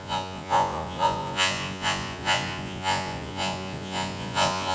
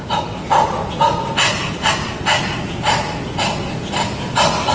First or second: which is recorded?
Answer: second